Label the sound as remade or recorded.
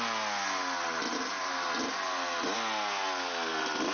recorded